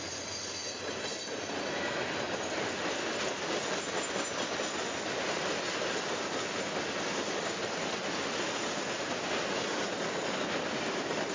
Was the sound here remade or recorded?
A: recorded